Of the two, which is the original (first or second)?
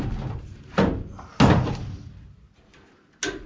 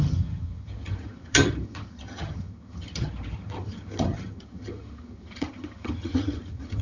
first